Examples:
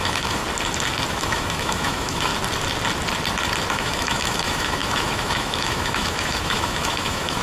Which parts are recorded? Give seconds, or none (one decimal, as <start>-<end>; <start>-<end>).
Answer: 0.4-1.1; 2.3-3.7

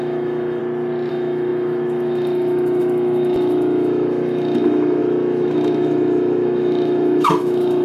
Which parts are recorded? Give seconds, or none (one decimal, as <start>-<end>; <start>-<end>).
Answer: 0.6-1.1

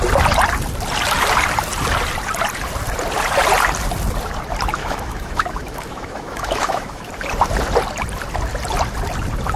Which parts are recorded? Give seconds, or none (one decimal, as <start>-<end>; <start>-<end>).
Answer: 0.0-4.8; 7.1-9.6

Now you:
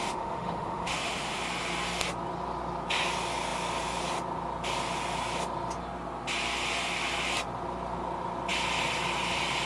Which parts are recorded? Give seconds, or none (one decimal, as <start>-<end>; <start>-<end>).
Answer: 1.4-9.7